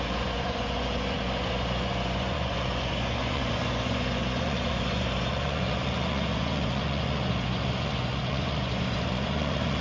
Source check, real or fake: fake